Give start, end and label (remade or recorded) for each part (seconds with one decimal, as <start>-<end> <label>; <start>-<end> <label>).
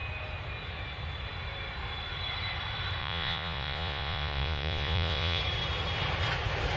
0.0-3.0 recorded; 3.0-5.4 remade; 5.4-6.8 recorded